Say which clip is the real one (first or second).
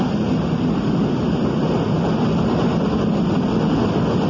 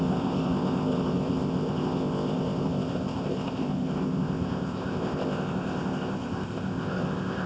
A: first